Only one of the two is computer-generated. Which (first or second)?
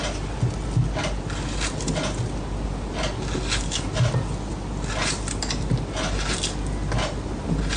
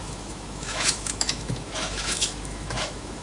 second